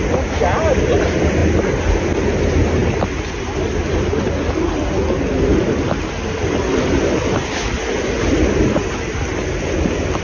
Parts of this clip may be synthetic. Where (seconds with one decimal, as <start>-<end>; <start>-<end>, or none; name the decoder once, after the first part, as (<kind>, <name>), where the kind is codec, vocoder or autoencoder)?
none